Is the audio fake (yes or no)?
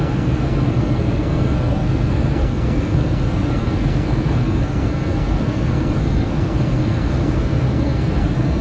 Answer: yes